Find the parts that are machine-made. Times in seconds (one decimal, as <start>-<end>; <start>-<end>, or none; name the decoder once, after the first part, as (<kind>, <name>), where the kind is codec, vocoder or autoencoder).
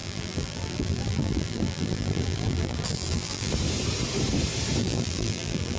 0.0-3.5 (vocoder, BigVGAN v2); 4.8-5.8